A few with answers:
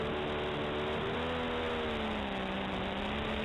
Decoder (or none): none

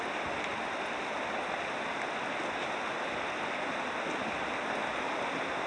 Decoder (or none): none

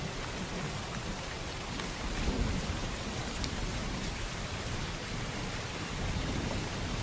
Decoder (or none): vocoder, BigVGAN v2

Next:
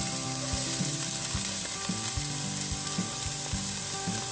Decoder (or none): none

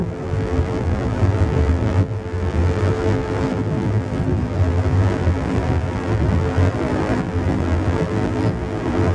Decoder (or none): vocoder, BigVGAN v2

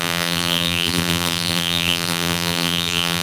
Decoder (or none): vocoder, BigVGAN v2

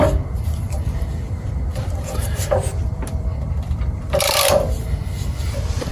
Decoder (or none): vocoder, BigVGAN v2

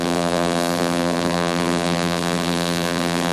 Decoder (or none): vocoder, BigVGAN v2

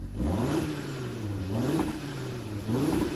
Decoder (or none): vocoder, BigVGAN v2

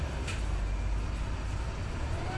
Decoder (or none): none